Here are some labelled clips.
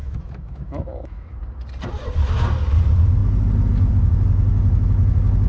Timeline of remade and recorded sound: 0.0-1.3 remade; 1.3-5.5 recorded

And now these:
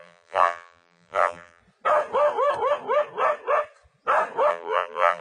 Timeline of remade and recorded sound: 0.0-1.6 remade; 1.6-4.5 recorded; 4.5-5.2 remade